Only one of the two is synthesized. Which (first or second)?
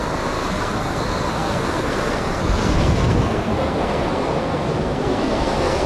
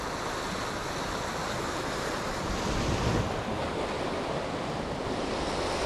first